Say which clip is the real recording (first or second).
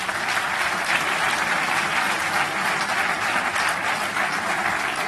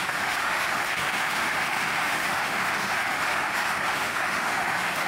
first